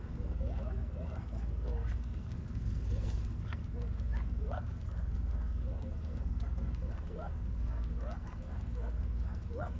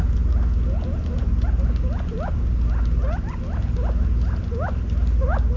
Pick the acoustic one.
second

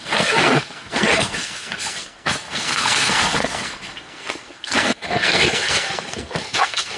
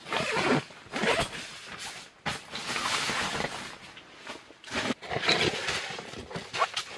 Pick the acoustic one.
second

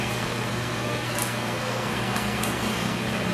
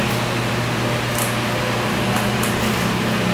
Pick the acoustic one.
second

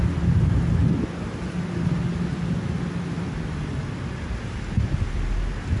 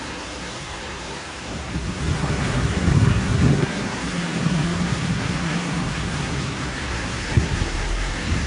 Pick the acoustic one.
first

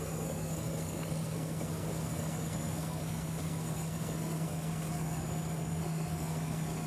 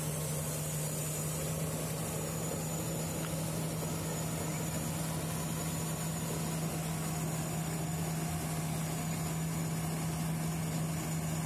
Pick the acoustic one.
second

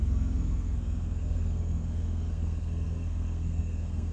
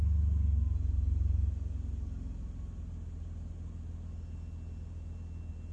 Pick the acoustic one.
second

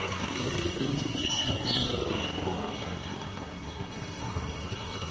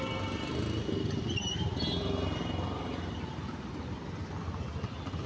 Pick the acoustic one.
second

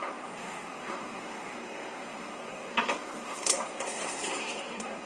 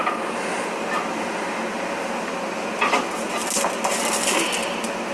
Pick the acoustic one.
second